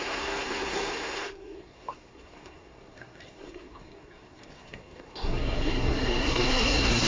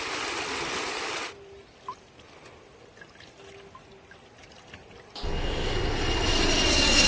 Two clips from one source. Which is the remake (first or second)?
first